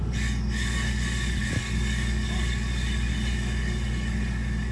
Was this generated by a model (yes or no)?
yes